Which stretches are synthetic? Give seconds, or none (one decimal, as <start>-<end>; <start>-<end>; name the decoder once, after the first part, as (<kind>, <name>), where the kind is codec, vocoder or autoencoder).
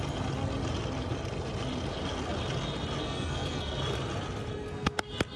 3.0-3.8 (codec, SNAC); 4.5-5.0